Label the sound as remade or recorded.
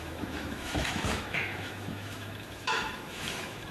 remade